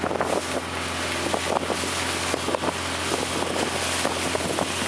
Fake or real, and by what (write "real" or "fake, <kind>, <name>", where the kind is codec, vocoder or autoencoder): real